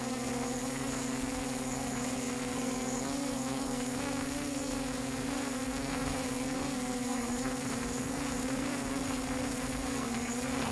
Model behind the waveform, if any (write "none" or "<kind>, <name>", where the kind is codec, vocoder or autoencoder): codec, SNAC